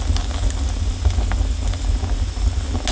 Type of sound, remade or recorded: recorded